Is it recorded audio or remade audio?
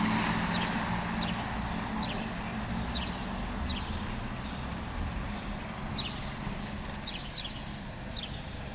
recorded